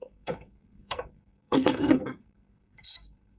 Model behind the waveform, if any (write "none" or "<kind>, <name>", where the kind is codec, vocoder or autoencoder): codec, SNAC